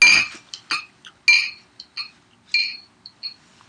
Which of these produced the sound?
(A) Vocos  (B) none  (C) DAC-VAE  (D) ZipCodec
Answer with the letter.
B